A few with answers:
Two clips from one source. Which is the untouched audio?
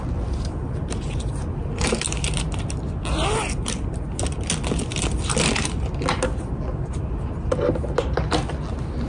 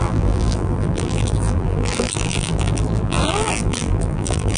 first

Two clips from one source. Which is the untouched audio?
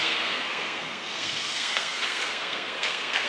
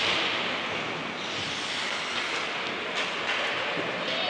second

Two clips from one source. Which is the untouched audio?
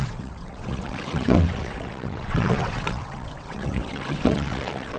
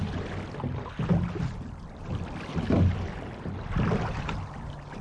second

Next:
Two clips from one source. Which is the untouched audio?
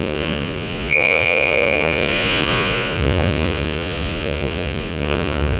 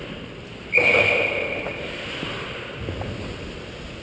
second